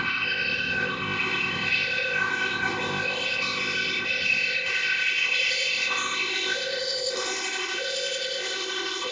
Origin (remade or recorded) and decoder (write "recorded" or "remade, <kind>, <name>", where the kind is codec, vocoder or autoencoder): remade, codec, ZipCodec